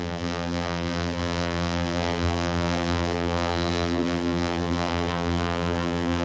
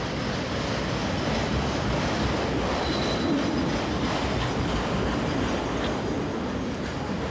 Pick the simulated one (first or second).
first